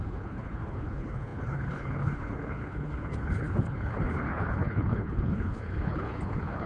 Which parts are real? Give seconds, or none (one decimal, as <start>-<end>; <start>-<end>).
none